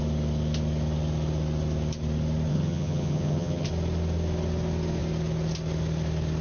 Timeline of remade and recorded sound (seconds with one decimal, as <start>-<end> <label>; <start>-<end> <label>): 0.0-2.5 recorded; 2.5-3.7 remade; 3.7-6.4 recorded